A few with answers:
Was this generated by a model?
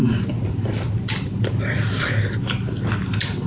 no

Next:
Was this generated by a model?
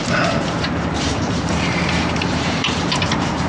yes